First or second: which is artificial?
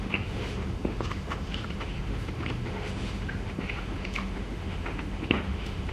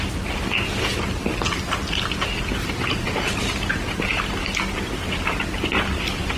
first